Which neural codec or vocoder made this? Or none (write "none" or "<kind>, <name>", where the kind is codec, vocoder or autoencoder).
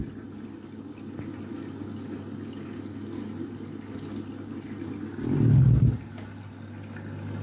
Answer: none